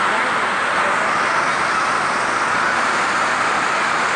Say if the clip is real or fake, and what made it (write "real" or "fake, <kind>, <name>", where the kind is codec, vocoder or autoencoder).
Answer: real